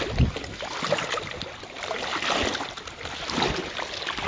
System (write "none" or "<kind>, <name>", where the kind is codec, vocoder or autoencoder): none